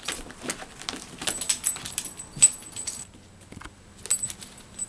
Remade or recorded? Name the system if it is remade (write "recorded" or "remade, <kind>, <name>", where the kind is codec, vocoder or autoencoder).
recorded